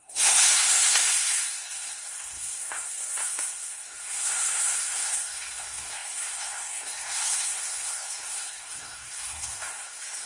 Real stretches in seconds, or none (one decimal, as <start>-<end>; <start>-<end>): none